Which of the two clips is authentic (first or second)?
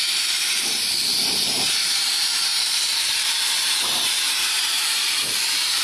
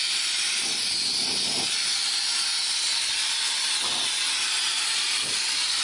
second